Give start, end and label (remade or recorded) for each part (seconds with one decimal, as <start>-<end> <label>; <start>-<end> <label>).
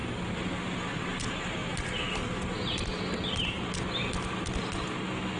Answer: 0.0-5.4 recorded